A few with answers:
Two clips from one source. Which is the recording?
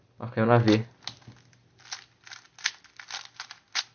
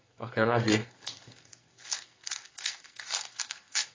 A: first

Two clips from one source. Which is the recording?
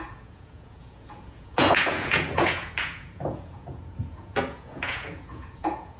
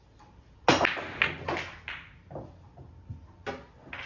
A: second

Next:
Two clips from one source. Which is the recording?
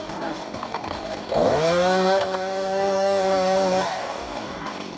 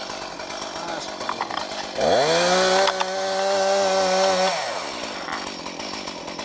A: second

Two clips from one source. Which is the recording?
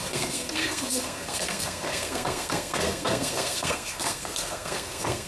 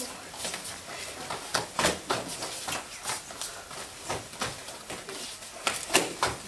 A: second